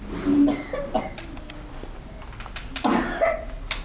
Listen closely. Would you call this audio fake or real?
real